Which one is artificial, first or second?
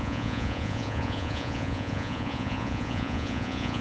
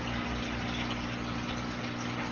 first